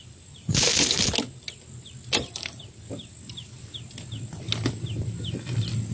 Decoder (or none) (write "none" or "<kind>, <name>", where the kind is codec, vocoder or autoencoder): none